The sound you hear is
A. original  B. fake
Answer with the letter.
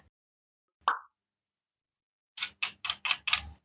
A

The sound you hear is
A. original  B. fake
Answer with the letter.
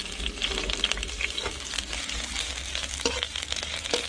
A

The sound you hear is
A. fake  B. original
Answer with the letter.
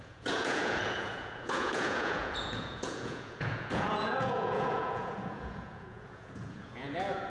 A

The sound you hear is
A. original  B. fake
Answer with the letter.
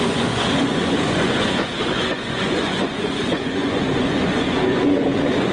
B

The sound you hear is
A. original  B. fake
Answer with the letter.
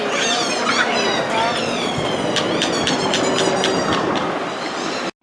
A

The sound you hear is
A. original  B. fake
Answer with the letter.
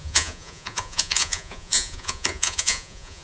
B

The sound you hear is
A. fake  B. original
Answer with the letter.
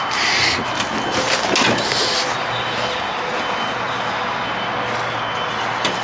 B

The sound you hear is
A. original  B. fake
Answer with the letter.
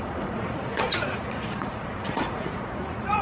B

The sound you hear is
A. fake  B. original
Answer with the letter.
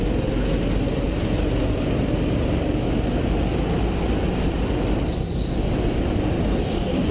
B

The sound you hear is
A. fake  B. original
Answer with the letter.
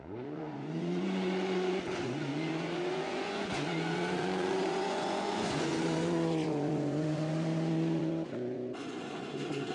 A